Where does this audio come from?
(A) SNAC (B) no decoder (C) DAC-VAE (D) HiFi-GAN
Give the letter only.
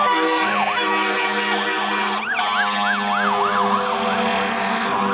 B